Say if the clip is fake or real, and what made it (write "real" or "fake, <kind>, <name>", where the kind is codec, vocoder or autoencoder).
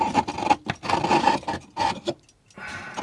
real